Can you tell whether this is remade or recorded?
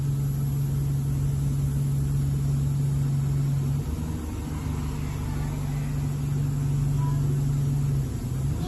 recorded